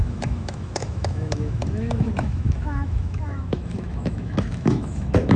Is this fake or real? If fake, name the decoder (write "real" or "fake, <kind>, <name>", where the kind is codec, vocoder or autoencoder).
fake, autoencoder, DAC-VAE